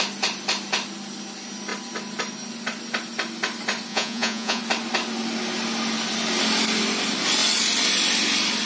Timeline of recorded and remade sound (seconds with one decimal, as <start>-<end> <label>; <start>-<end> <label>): 0.0-3.9 recorded; 3.9-4.6 remade; 4.6-8.7 recorded